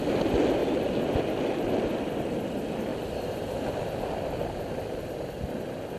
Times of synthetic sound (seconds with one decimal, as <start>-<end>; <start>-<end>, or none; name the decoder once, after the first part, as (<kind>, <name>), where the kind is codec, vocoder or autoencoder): none